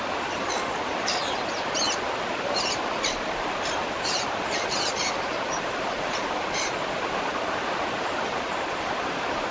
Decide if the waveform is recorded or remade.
recorded